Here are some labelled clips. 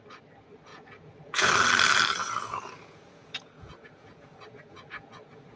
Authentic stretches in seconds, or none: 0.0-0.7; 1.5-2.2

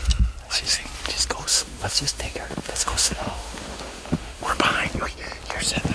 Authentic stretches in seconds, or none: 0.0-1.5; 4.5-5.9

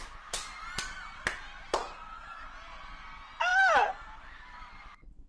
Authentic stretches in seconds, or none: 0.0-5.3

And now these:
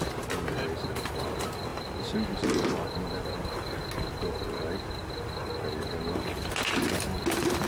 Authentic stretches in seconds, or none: 0.0-7.7